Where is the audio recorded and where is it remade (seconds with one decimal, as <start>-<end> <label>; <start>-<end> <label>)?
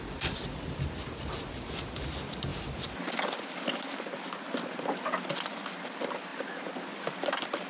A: 0.0-7.7 recorded